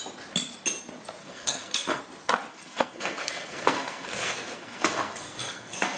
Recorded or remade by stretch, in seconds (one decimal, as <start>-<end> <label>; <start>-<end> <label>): 0.0-1.2 recorded; 1.2-2.0 remade; 2.0-2.5 recorded; 2.5-6.0 remade